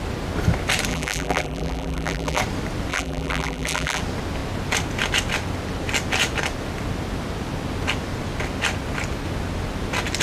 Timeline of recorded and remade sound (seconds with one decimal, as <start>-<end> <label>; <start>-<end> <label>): 0.0-0.9 recorded; 0.9-2.4 remade; 2.4-2.9 recorded; 2.9-4.0 remade; 4.0-10.2 recorded